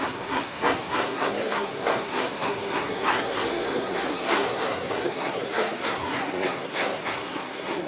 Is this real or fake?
fake